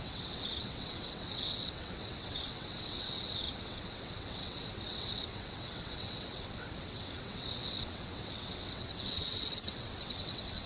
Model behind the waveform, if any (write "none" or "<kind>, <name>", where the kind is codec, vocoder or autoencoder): vocoder, WaveNeXt